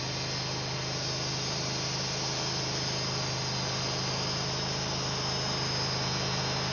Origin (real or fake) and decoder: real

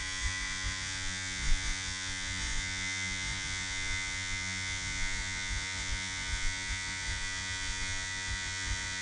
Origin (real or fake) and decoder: fake, vocoder, Vocos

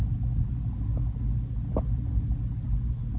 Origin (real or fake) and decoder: real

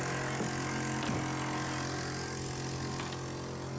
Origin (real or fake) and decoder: real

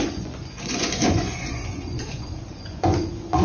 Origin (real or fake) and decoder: fake, vocoder, Vocos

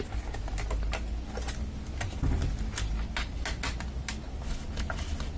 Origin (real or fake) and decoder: real